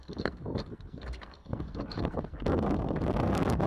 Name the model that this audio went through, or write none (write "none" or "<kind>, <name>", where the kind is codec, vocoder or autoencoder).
codec, SNAC